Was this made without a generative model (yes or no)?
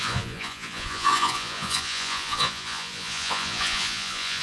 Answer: no